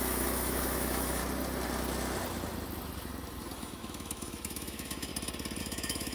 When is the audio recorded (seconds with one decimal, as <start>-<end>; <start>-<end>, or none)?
1.2-3.6; 5.1-5.6